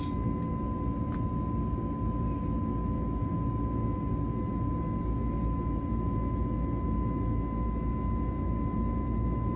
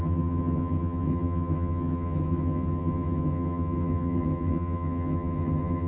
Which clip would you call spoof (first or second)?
second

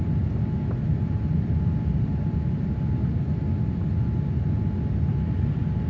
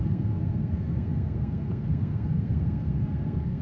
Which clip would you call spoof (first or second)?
second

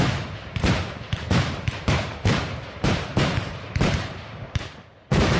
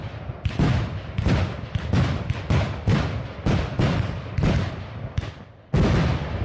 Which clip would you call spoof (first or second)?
first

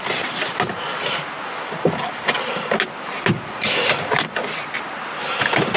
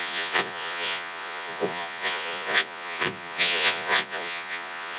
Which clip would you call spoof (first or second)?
second